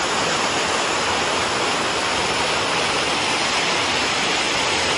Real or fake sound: real